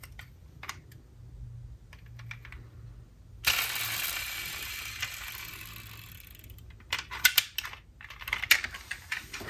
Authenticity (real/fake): real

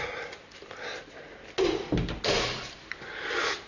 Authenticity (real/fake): real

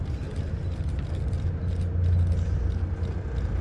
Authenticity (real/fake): real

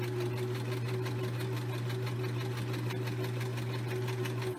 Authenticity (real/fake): real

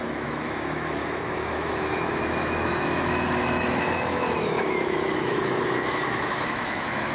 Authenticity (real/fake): fake